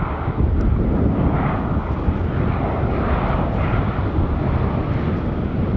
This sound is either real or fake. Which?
real